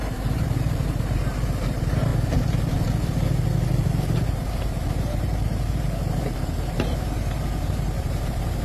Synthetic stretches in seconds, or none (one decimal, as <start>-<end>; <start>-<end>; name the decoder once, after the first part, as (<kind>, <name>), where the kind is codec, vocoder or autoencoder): 0.0-2.1 (vocoder, BigVGAN v2); 4.0-8.6